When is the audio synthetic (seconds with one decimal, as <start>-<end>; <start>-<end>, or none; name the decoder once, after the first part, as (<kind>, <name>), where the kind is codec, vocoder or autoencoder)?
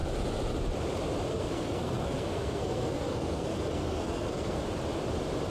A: 1.3-4.6 (codec, SNAC)